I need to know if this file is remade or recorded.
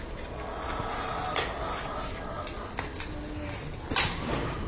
recorded